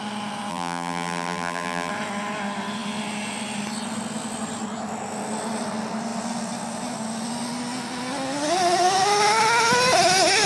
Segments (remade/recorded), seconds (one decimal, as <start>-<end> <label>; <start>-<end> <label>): 0.0-0.5 recorded; 0.5-1.9 remade; 1.9-10.5 recorded